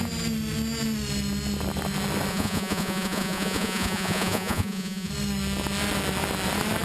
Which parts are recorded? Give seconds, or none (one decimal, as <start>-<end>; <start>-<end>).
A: 0.0-2.3; 5.1-6.8